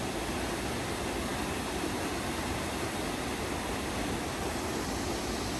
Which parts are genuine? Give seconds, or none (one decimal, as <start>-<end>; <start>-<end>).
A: 0.0-5.6